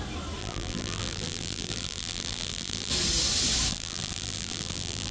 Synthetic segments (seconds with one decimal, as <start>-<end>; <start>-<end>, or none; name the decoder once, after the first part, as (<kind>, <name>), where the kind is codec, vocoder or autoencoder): 0.4-2.9 (vocoder, BigVGAN v2); 3.7-5.1